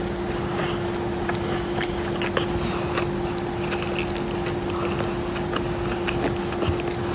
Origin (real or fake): real